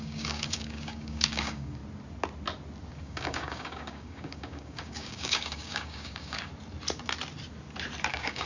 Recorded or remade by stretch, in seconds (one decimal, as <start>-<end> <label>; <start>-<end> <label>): 0.0-1.8 remade; 1.8-3.0 recorded; 3.0-6.5 remade; 6.5-8.1 recorded; 8.1-8.5 remade